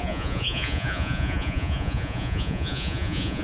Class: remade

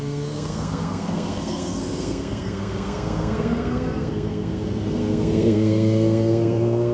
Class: remade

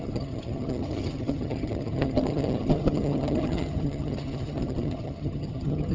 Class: remade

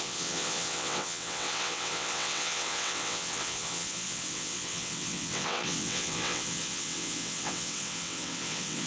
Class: remade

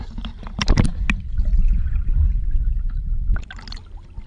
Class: recorded